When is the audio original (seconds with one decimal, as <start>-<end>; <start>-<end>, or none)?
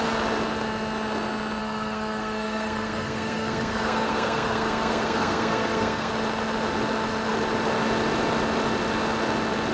0.0-1.6; 6.1-9.7